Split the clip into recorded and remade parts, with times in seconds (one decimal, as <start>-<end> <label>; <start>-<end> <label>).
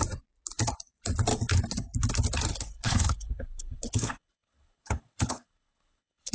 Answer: 0.0-2.5 recorded; 2.5-6.3 remade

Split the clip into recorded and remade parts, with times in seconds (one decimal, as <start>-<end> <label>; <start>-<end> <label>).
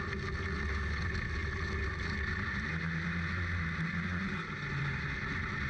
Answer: 0.0-5.7 recorded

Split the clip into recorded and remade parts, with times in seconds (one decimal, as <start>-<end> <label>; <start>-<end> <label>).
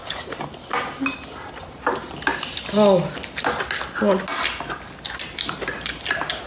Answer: 0.0-6.5 recorded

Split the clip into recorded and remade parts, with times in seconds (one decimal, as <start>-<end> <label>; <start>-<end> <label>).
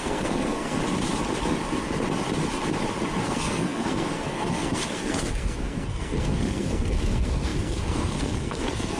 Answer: 0.0-0.8 remade; 0.8-3.2 recorded; 3.2-9.0 remade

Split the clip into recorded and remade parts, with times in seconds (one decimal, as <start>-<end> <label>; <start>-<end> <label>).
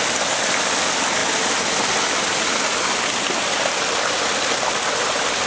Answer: 0.0-5.5 recorded